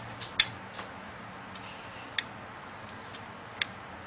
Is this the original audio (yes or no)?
yes